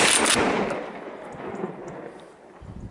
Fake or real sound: real